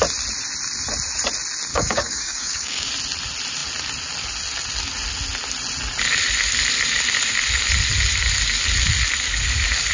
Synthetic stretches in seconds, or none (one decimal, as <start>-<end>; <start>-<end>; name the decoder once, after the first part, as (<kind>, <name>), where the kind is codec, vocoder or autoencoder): 1.7-2.9 (codec, DAC)

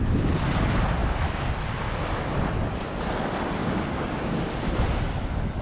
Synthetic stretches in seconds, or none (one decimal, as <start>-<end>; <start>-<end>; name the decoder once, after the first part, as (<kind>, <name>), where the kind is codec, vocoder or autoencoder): 3.6-4.7 (codec, DAC)

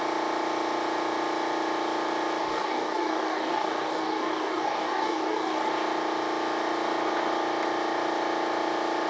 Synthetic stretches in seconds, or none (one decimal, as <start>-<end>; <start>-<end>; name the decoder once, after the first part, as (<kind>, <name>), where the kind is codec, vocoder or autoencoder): 2.4-5.7 (codec, DAC)

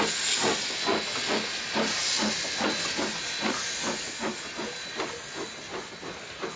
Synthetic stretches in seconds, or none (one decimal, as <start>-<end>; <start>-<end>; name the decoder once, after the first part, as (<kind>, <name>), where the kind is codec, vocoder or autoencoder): none

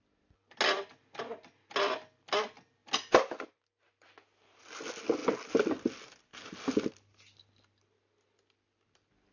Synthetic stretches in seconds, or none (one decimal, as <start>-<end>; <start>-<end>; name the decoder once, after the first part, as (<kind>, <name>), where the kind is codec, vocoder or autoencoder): none

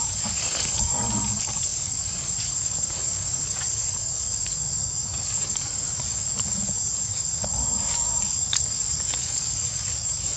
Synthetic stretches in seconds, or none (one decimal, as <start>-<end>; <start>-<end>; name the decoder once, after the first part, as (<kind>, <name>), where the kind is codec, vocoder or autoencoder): 0.0-10.4 (codec, DAC)